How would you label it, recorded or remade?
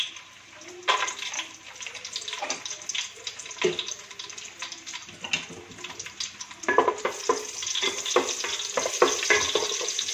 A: recorded